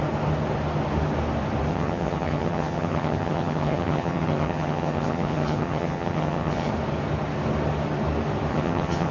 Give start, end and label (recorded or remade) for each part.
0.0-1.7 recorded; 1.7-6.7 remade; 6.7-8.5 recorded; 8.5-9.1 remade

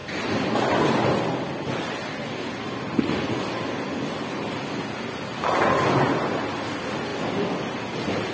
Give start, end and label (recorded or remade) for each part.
0.0-8.3 recorded